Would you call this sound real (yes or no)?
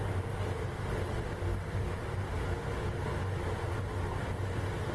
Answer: yes